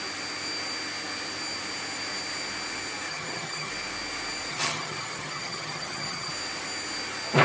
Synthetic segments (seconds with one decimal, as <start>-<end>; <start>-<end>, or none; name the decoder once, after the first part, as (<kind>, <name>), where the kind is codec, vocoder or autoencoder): 3.1-3.7 (vocoder, HiFi-GAN); 4.5-6.3